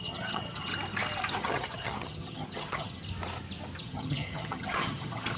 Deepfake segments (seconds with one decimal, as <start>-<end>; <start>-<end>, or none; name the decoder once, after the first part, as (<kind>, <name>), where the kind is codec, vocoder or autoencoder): 0.0-0.7 (vocoder, HiFi-GAN); 1.4-3.0; 3.8-5.4